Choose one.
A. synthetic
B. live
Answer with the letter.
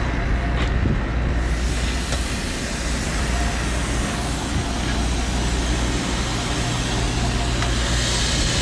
B